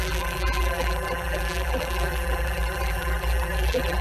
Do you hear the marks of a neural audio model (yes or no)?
yes